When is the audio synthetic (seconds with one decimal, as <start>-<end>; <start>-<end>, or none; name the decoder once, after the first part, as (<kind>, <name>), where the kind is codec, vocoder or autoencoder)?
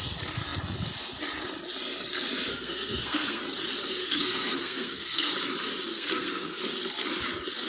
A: 2.5-3.4 (codec, SNAC); 4.0-5.3; 5.9-6.6